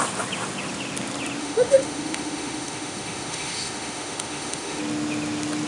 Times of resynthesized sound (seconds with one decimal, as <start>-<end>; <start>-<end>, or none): 1.4-4.8